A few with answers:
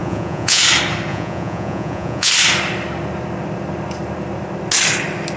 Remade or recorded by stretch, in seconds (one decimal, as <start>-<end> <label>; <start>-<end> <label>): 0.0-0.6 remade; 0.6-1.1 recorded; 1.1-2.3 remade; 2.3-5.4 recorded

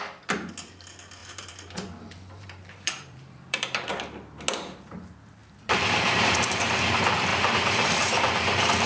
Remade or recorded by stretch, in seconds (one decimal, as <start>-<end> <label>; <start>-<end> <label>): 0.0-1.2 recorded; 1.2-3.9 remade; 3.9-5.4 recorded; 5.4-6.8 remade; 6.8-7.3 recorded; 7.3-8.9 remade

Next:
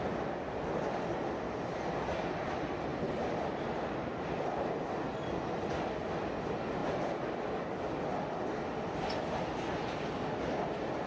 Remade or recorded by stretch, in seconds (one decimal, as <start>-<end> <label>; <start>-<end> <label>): 0.0-11.1 recorded

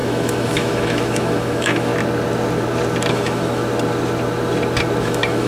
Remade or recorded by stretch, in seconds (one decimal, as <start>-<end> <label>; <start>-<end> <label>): 0.0-1.9 remade; 1.9-3.1 recorded; 3.1-3.6 remade; 3.6-5.0 recorded; 5.0-5.5 remade